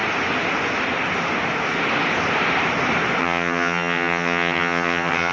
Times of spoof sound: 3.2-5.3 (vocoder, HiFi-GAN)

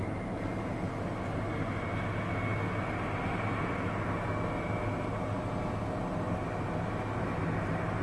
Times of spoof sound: none

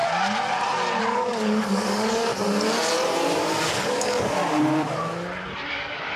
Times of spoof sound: 1.0-2.3 (codec, DAC); 3.6-4.4; 5.7-6.2

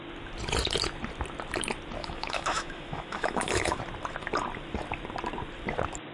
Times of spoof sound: 2.0-3.8 (autoencoder, DAC-VAE)

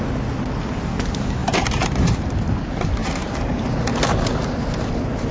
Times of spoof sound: 1.4-2.2 (vocoder, BigVGAN v2); 3.0-3.6